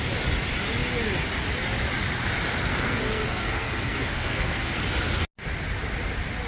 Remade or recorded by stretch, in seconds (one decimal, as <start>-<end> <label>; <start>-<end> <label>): 0.0-2.7 recorded; 2.7-4.8 remade; 4.8-6.5 recorded